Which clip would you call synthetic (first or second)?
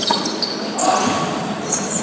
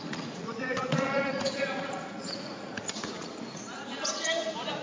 second